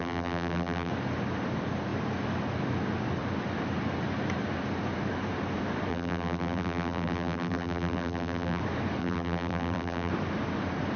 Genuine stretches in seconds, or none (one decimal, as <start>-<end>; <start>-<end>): 0.9-5.9; 8.6-9.0; 10.1-11.0

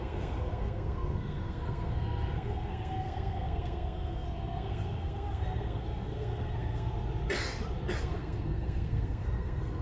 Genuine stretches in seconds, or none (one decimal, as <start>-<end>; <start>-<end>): 6.9-8.0

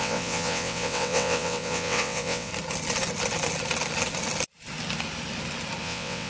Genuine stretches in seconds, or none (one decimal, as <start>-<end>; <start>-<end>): 2.5-5.8

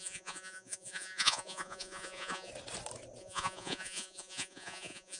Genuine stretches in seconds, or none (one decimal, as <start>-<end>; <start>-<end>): 2.5-3.2

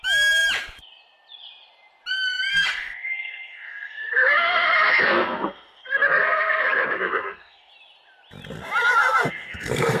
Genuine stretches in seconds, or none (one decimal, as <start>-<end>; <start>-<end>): 0.0-2.5; 7.7-9.0

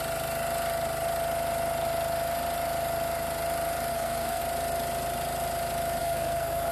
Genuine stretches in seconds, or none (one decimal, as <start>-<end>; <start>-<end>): 0.0-3.9; 4.4-6.0

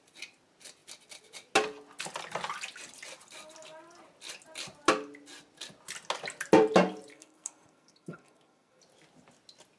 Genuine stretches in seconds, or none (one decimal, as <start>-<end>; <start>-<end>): 0.0-7.1; 8.8-9.8